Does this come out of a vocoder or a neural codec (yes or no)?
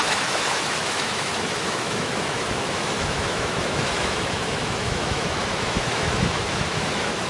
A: yes